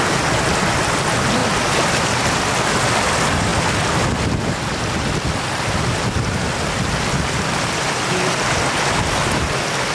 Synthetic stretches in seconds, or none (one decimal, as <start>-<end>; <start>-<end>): none